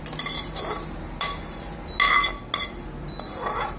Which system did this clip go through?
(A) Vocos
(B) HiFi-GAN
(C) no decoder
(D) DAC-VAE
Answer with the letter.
C